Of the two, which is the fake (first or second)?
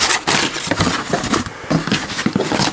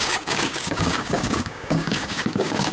second